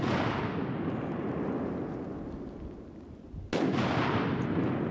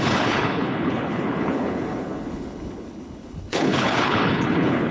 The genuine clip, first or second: first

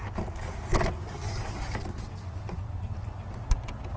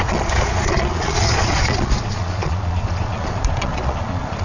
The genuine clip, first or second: first